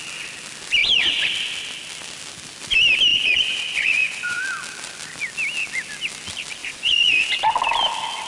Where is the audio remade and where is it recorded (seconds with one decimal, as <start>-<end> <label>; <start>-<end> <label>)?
0.0-0.8 recorded; 0.8-1.3 remade; 1.3-3.1 recorded; 3.1-4.4 remade; 4.4-6.6 recorded; 6.6-7.4 remade; 7.4-8.3 recorded